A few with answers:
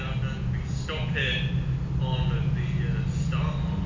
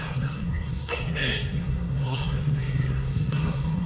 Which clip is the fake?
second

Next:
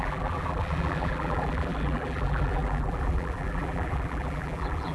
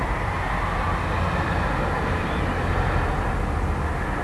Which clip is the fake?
first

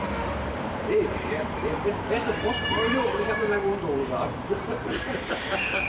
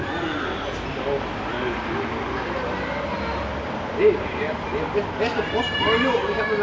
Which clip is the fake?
first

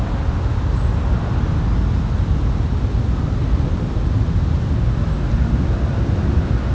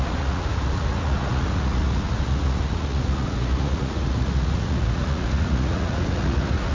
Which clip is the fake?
second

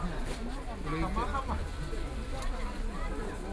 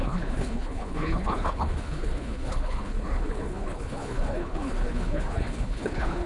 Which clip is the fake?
second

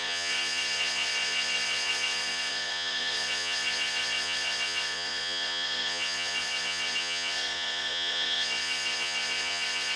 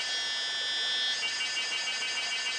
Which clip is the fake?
first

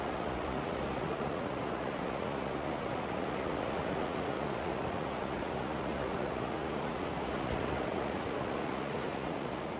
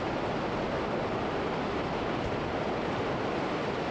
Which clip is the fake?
first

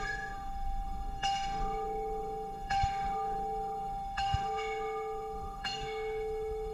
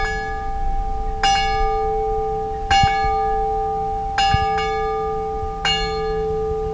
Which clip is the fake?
first